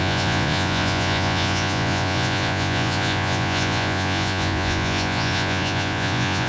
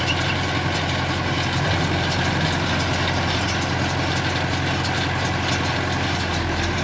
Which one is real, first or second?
second